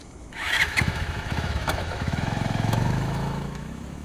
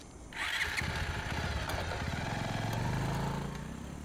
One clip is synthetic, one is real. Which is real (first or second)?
second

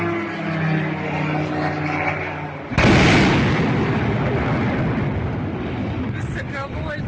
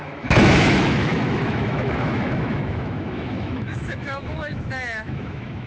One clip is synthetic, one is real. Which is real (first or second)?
first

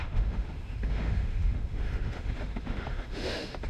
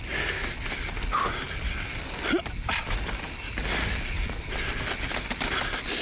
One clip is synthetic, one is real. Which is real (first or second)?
second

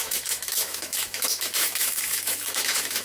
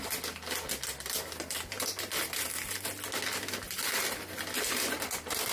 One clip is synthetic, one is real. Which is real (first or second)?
second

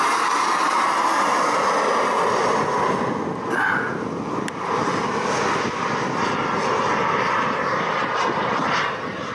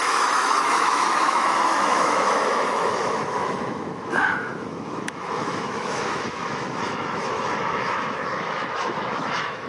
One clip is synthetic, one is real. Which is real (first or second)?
first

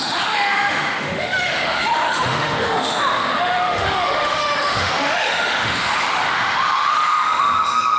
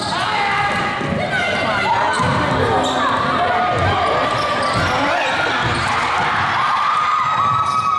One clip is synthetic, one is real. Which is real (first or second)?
second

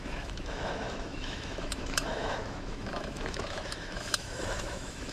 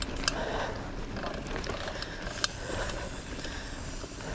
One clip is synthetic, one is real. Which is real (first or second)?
second